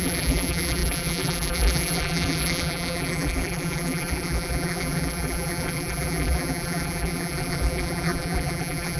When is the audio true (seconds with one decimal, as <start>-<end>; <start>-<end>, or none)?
none